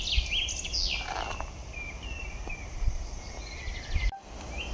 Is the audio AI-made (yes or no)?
no